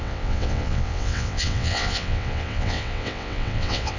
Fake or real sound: fake